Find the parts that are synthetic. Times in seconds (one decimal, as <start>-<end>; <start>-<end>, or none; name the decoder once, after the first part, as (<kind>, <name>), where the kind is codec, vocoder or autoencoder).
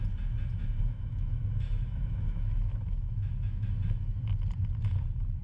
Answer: 0.5-3.7 (autoencoder, DAC-VAE)